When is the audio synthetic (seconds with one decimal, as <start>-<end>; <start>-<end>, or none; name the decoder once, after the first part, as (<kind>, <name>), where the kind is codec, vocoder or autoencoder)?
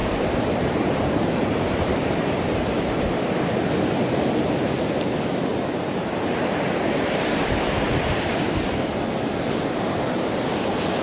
0.0-2.7 (vocoder, BigVGAN v2); 5.5-8.3